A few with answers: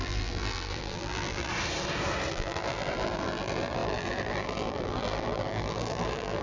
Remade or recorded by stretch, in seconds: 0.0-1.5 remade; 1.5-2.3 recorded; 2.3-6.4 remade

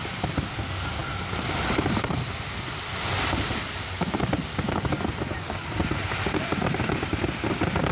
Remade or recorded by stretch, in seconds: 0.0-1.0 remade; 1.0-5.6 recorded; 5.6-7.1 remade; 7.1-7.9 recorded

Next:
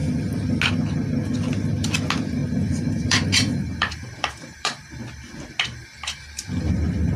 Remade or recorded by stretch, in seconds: 0.0-2.4 recorded; 2.4-4.8 remade; 4.8-5.8 recorded; 5.8-6.7 remade; 6.7-7.2 recorded

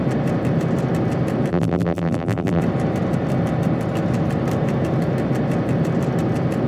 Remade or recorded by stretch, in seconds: 0.0-1.5 recorded; 1.5-2.6 remade; 2.6-6.7 recorded

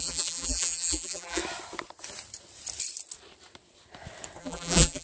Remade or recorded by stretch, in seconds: 0.0-1.4 remade; 1.4-4.4 recorded; 4.4-5.0 remade

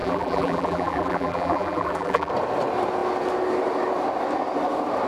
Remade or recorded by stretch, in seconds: 0.0-2.3 remade; 2.3-5.1 recorded

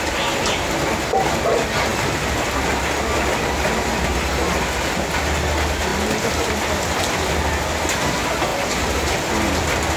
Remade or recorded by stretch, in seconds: 0.0-5.9 recorded; 5.9-7.3 remade; 7.3-8.5 recorded; 8.5-10.0 remade

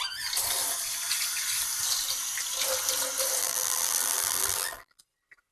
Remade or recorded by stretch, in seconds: 0.0-3.4 recorded; 3.4-5.0 remade; 5.0-5.5 recorded